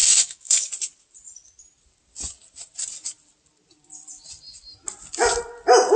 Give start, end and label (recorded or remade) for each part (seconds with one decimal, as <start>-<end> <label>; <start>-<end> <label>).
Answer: 0.0-0.7 remade; 0.7-6.0 recorded